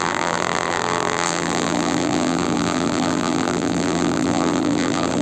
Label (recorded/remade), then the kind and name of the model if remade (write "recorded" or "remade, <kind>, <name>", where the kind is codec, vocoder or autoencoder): remade, vocoder, BigVGAN v2